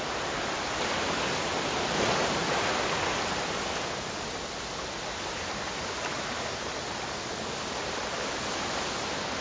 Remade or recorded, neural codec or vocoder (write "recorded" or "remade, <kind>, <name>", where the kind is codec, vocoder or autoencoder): recorded